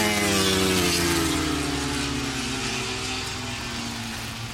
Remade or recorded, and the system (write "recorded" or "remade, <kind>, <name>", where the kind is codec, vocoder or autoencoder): recorded